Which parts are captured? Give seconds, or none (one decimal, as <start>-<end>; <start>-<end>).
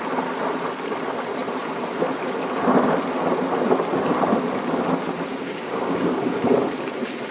0.0-5.3; 6.5-7.3